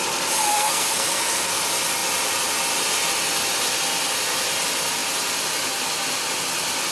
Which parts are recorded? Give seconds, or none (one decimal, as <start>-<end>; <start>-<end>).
0.0-0.5; 1.6-6.9